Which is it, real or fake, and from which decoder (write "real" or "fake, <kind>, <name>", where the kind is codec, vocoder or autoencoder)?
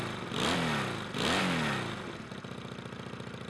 real